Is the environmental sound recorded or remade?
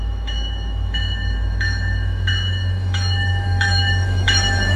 remade